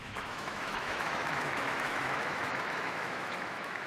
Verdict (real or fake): fake